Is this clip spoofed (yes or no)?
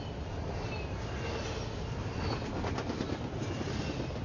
no